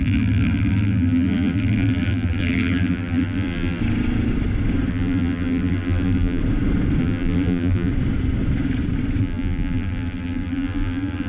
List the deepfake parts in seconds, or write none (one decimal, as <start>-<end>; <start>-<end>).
0.0-3.8; 4.9-6.4; 7.0-7.9; 9.2-11.3